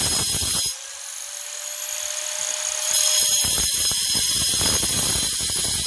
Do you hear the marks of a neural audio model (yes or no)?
no